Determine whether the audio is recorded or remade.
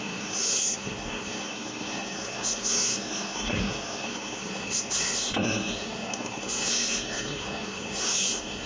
remade